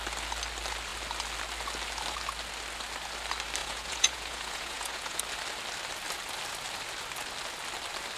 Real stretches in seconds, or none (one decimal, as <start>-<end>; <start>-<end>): 0.0-3.6; 5.2-8.2